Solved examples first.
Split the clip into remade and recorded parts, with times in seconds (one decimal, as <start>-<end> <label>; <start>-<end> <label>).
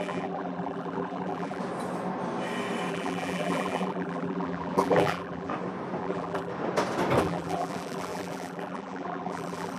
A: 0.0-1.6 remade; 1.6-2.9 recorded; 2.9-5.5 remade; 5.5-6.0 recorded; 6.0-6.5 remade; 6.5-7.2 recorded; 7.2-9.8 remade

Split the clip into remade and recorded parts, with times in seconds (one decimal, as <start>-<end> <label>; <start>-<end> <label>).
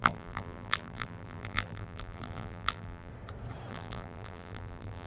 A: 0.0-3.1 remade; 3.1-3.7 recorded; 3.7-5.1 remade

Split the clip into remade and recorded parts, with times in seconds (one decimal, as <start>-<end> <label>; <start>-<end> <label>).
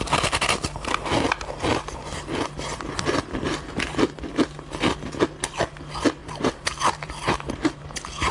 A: 0.0-6.2 recorded; 6.2-7.8 remade; 7.8-8.3 recorded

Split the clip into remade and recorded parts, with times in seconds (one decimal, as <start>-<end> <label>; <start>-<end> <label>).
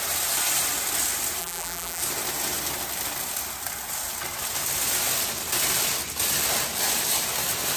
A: 0.0-1.4 recorded; 1.4-2.0 remade; 2.0-7.8 recorded